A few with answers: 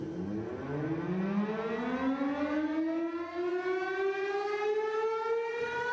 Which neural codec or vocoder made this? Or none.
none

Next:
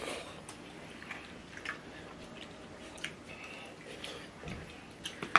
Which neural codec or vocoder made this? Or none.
none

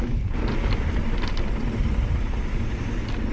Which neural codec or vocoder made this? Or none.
none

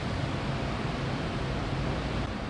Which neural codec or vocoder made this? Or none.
none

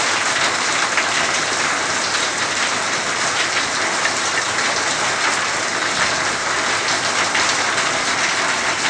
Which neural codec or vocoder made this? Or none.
none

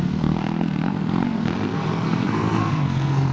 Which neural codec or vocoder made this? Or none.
codec, SNAC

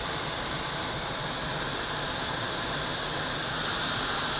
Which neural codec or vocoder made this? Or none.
vocoder, BigVGAN v2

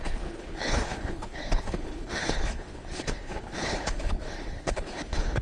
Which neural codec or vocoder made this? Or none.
codec, HILCodec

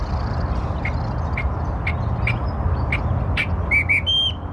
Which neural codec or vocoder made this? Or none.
none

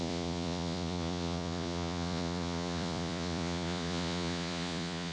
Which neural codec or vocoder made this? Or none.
vocoder, Vocos